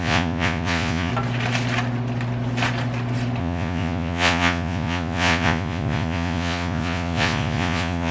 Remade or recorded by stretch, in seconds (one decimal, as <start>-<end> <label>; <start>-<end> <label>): 0.0-1.1 remade; 1.1-3.4 recorded; 3.4-8.1 remade